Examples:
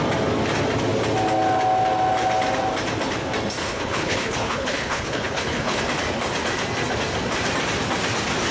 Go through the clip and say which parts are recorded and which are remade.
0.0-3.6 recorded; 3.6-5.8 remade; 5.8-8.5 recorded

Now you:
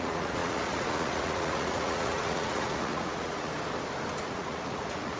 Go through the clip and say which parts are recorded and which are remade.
0.0-3.5 remade; 3.5-4.2 recorded; 4.2-5.2 remade

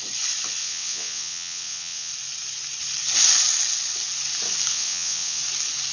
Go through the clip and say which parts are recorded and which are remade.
0.0-0.6 recorded; 0.6-2.1 remade; 2.1-4.7 recorded; 4.7-5.4 remade; 5.4-5.9 recorded